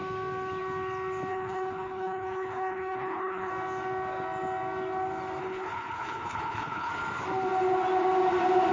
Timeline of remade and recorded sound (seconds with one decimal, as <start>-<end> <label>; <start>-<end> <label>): 0.0-1.3 recorded; 1.3-3.5 remade; 3.5-5.4 recorded; 5.4-6.9 remade; 6.9-8.7 recorded